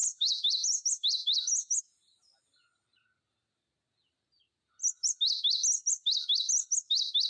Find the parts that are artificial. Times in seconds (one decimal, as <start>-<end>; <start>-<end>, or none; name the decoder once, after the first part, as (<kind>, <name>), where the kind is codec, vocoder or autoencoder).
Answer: 0.0-1.8 (vocoder, BigVGAN v2)